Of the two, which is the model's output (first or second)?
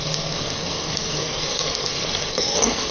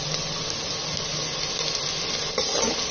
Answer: first